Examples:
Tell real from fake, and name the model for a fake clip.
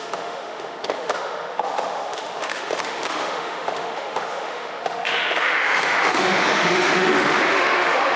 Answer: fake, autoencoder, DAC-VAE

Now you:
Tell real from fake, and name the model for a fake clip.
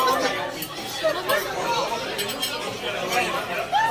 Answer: real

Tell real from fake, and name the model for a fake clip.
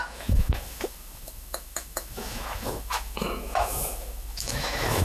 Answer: fake, autoencoder, DAC-VAE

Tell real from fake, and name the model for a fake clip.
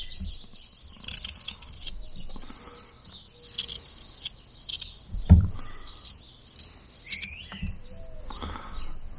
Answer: real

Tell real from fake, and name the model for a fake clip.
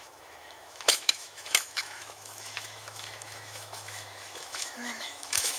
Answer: fake, autoencoder, DAC-VAE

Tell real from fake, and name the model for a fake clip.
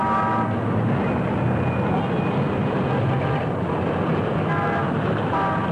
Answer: real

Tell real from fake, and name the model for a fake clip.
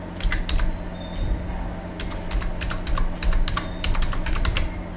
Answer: real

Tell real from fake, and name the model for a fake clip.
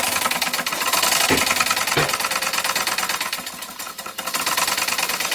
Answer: real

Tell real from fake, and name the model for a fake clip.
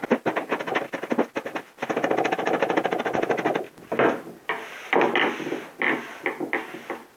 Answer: real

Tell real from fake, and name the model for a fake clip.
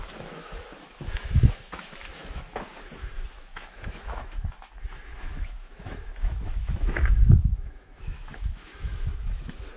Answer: fake, autoencoder, DAC-VAE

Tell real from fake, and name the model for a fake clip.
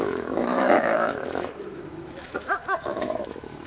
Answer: fake, autoencoder, DAC-VAE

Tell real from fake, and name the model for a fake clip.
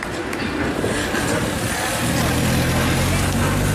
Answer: real